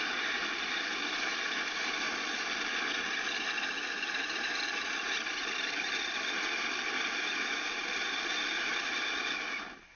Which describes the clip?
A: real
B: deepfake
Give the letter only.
A